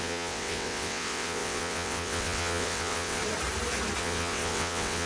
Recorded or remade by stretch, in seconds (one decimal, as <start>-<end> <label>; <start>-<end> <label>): 0.0-3.2 remade; 3.2-4.0 recorded; 4.0-5.1 remade